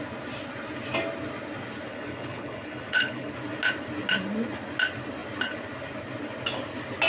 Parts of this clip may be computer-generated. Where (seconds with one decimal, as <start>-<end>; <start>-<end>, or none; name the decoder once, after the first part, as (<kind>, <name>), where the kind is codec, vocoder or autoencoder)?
1.9-3.3 (codec, HILCodec)